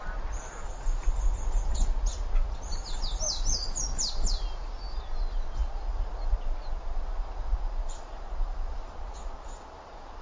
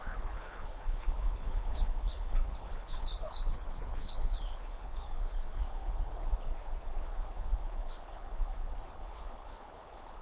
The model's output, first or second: second